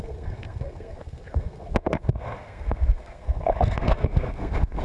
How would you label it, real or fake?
fake